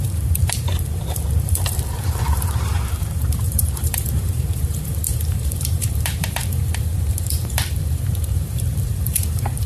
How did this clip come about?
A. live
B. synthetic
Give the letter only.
B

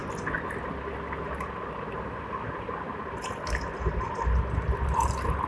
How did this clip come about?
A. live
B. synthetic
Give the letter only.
A